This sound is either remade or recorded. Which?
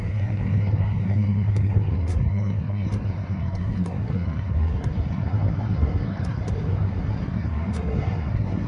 remade